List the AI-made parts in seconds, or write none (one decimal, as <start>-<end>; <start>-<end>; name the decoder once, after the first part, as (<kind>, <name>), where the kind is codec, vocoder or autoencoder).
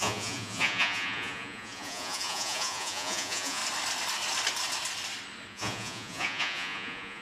0.0-3.6 (vocoder, Vocos); 5.5-7.2